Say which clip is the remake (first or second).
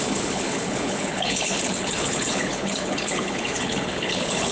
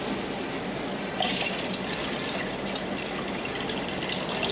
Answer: first